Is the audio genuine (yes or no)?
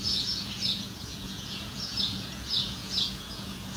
no